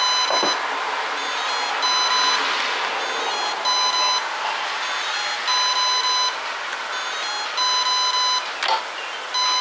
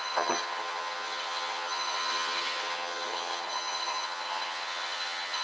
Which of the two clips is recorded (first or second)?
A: first